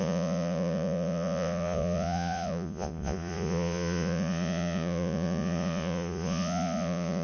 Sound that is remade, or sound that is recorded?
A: remade